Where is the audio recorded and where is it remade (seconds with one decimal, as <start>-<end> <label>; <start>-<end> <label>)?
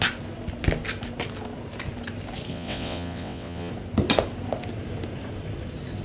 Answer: 0.0-2.5 recorded; 2.5-3.7 remade; 3.7-6.0 recorded